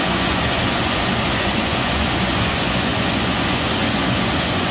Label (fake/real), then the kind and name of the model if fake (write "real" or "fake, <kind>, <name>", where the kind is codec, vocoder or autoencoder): fake, vocoder, Vocos